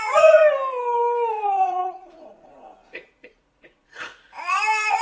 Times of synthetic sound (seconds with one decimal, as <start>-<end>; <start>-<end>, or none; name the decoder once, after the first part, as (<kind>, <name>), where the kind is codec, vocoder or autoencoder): 0.0-0.4 (vocoder, Vocos); 1.3-5.0